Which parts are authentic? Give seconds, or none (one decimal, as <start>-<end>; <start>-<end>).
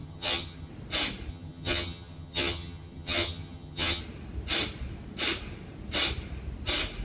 0.7-1.3; 4.0-7.0